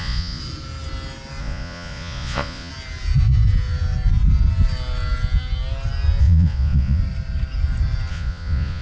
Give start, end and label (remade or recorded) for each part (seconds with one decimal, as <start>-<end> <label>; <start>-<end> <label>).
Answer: 0.0-0.4 remade; 0.4-1.4 recorded; 1.4-2.7 remade; 2.7-6.2 recorded; 6.2-7.0 remade; 7.0-8.1 recorded; 8.1-8.8 remade

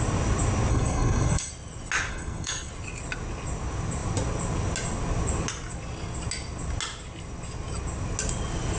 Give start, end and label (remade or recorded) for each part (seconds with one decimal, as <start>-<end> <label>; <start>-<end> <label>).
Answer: 0.0-0.7 recorded; 0.7-1.5 remade; 1.5-2.1 recorded; 2.1-2.7 remade; 2.7-8.8 recorded

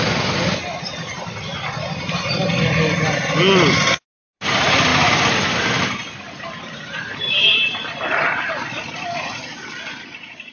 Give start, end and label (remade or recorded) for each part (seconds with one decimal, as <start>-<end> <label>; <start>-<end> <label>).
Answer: 0.0-10.5 recorded

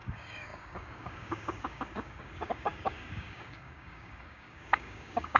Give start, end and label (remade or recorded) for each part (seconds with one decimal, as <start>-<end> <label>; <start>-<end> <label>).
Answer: 0.0-5.4 remade

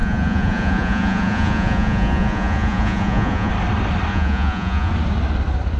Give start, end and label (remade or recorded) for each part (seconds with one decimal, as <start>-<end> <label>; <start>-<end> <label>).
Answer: 0.0-3.5 remade; 3.5-4.1 recorded; 4.1-4.9 remade; 4.9-5.8 recorded

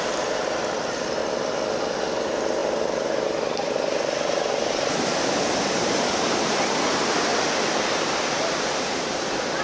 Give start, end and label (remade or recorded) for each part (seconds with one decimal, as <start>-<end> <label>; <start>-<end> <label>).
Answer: 0.0-1.2 remade; 1.2-2.1 recorded; 2.1-7.3 remade; 7.3-8.0 recorded; 8.0-9.6 remade

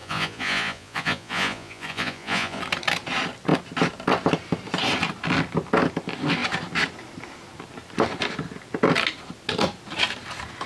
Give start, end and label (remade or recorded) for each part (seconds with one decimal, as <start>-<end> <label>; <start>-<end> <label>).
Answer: 0.0-2.6 remade; 2.6-10.7 recorded